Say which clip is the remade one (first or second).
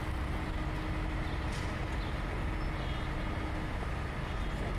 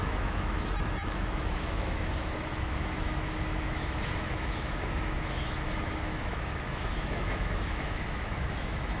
second